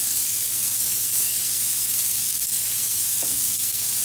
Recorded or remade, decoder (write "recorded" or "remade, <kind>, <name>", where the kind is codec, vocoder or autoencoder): remade, codec, SNAC